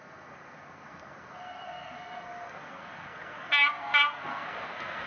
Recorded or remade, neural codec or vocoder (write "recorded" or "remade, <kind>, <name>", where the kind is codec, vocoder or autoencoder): remade, codec, SNAC